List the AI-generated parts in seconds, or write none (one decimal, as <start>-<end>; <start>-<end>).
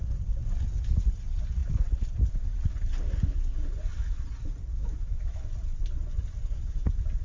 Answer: 4.7-5.5